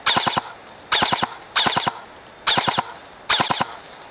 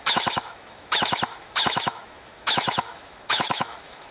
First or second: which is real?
first